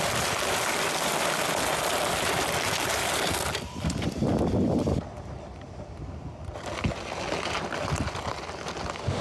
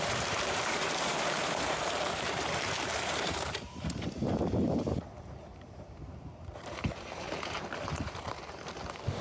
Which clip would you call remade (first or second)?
second